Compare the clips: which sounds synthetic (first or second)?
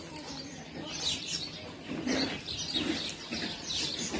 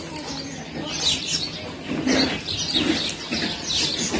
first